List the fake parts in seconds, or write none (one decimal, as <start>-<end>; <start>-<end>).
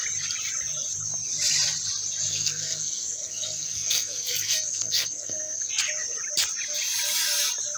2.3-5.7